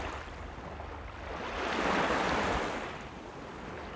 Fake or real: real